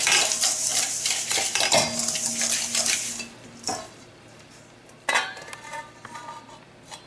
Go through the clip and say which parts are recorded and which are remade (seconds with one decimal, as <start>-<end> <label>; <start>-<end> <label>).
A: 0.0-0.7 recorded; 0.7-1.3 remade; 1.3-7.1 recorded